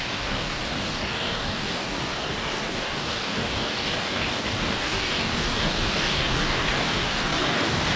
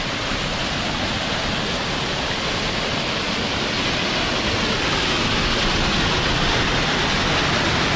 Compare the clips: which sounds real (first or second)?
second